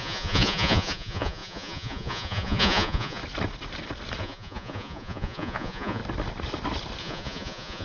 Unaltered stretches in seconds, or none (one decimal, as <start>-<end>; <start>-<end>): 3.2-4.2; 6.0-7.0